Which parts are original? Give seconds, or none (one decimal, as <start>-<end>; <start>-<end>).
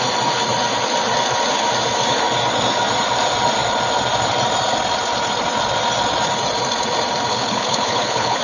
0.0-7.3